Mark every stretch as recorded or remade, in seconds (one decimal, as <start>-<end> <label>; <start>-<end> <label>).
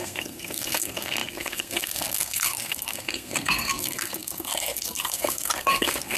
0.0-6.2 remade